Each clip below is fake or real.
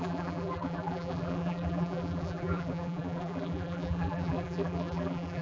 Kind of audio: fake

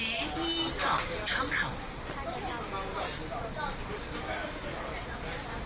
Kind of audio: real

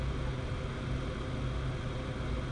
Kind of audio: real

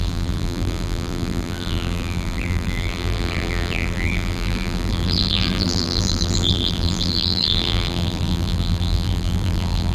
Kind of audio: fake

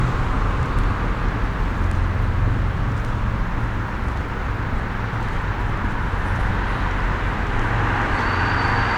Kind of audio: real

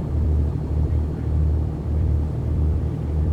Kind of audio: fake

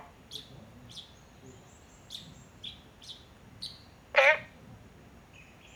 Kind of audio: real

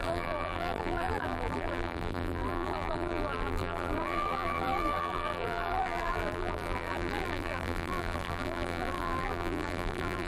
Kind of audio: fake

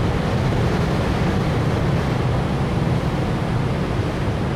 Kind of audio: real